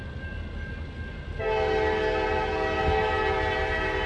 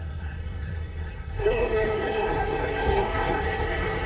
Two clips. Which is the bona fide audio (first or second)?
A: first